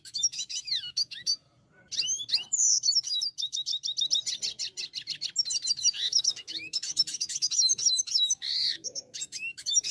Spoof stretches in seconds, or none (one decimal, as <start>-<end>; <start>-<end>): 0.0-1.3; 2.3-3.7; 5.7-9.9